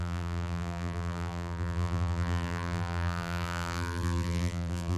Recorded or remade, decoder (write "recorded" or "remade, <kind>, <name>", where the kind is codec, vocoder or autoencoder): remade, vocoder, BigVGAN v2